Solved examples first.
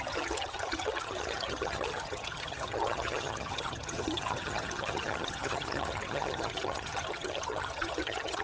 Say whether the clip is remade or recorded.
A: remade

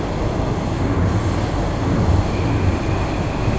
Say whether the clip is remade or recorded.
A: recorded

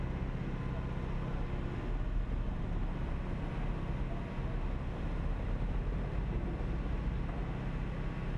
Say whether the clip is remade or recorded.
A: recorded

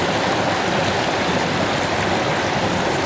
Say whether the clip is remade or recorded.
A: recorded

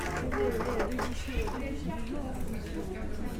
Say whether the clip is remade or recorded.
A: recorded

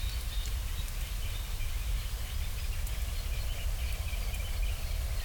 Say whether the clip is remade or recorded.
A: remade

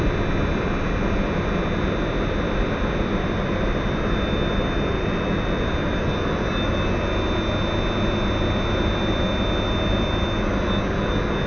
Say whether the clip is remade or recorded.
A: recorded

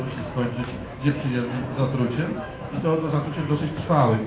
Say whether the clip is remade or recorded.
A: remade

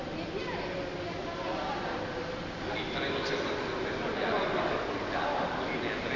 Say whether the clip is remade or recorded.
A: recorded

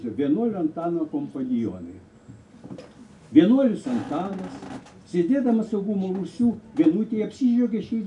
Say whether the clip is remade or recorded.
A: recorded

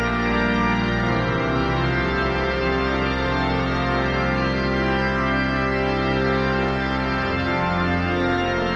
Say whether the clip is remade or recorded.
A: recorded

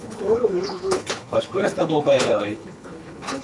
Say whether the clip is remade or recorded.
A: remade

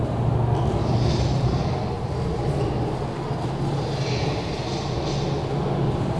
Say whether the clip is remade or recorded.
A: recorded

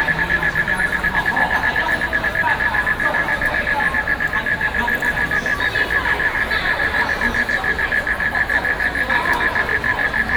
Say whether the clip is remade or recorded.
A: recorded